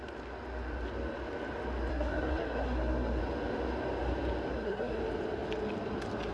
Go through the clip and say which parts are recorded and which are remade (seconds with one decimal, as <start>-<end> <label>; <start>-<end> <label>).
0.0-1.9 recorded; 1.9-3.2 remade; 3.2-4.5 recorded; 4.5-5.0 remade; 5.0-6.3 recorded

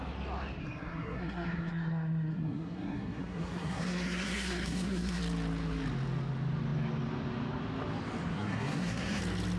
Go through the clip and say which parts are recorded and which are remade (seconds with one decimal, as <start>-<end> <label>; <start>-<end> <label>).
0.0-0.6 recorded; 0.6-5.2 remade; 5.2-8.3 recorded; 8.3-9.2 remade; 9.2-9.6 recorded

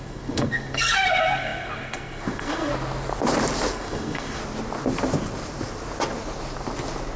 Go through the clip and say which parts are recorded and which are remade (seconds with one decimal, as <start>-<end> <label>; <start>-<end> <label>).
0.0-2.7 remade; 2.7-3.7 recorded; 3.7-4.4 remade; 4.4-7.2 recorded

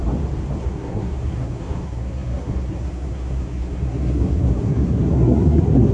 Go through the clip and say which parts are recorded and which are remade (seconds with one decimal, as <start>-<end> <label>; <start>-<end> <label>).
0.0-0.6 recorded; 0.6-5.9 remade

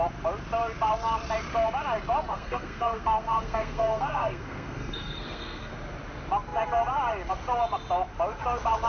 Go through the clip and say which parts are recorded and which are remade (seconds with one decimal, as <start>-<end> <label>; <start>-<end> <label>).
0.0-2.3 recorded; 2.3-5.7 remade; 5.7-8.9 recorded

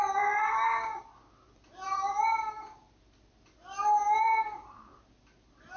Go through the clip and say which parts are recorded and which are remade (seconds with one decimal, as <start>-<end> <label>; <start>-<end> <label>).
0.0-5.8 recorded